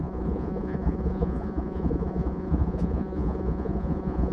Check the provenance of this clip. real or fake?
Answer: fake